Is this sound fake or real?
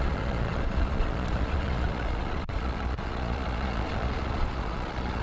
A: fake